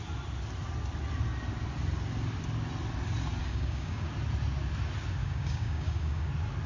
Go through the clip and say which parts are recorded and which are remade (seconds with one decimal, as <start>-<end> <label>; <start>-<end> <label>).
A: 0.0-3.4 recorded; 3.4-4.1 remade; 4.1-5.2 recorded; 5.2-6.3 remade; 6.3-6.7 recorded